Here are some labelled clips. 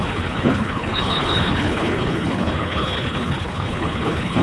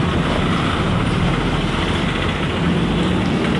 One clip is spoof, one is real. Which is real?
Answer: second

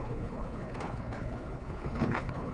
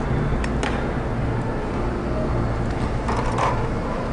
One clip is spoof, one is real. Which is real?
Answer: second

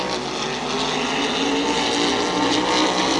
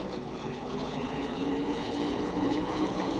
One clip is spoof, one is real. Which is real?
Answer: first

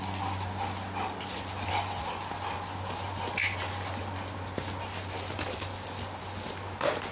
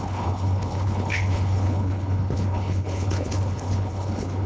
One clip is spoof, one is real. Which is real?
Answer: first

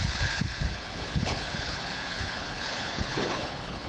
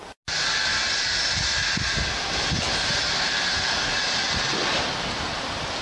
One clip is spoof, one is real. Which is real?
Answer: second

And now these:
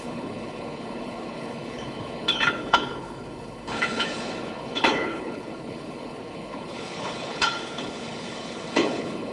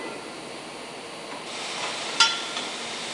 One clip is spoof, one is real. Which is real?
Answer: second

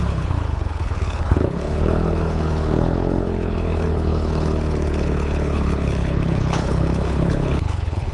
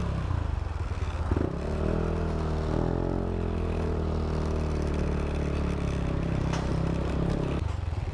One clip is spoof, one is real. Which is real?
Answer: second